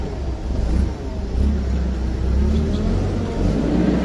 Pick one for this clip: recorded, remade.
recorded